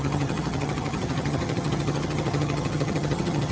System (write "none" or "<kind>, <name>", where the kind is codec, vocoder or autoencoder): vocoder, HiFi-GAN